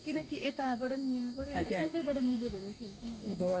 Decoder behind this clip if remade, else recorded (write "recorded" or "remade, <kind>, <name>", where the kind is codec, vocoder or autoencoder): remade, codec, DAC